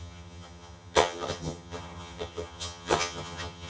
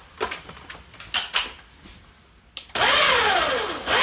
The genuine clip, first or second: second